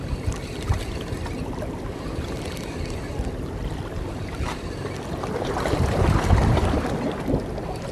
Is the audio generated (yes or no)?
no